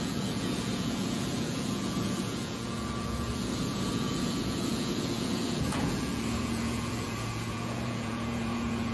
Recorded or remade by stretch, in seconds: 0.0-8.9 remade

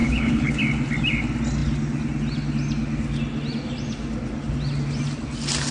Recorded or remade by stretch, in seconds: 0.0-0.6 remade; 0.6-5.7 recorded

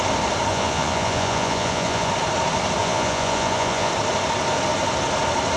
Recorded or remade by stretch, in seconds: 0.0-0.5 recorded; 0.5-2.1 remade; 2.1-2.8 recorded; 2.8-3.9 remade; 3.9-5.6 recorded